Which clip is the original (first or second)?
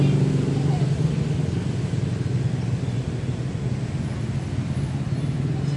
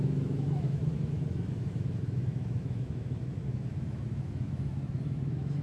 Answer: first